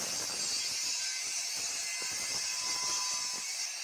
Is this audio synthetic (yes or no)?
no